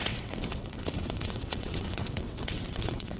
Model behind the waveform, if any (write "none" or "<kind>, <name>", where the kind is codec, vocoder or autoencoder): vocoder, WaveNeXt